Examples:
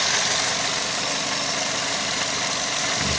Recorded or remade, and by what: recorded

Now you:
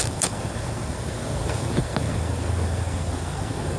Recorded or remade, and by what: remade, codec, SNAC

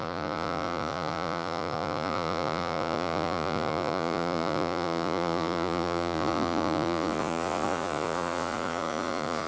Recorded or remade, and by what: remade, vocoder, Vocos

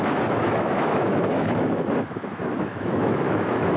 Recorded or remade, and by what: remade, autoencoder, DAC-VAE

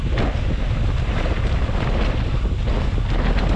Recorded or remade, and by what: recorded